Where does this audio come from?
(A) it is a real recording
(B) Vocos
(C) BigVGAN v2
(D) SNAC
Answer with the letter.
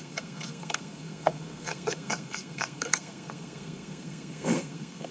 D